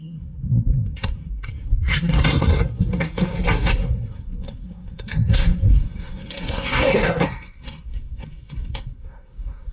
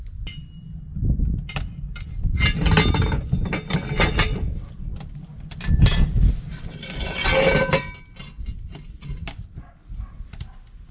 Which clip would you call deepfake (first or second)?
first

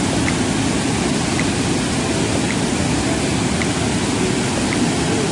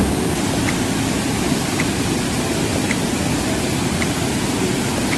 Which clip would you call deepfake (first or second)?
second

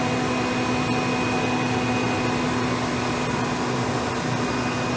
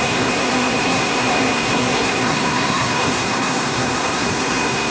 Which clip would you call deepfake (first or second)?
second